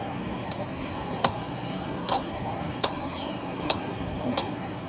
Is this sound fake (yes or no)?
yes